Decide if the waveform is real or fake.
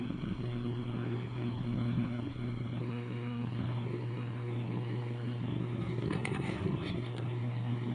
fake